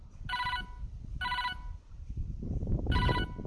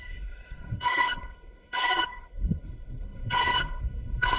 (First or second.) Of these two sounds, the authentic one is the first